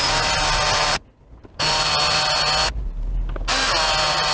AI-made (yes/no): no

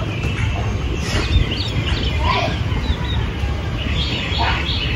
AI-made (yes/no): no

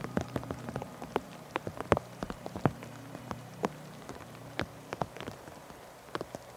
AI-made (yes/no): yes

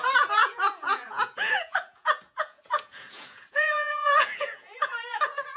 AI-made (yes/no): yes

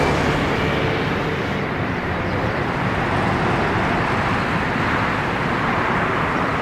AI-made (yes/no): no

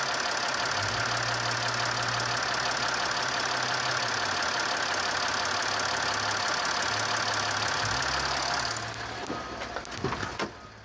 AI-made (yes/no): no